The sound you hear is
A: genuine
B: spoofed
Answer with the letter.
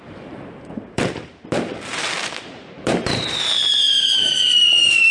B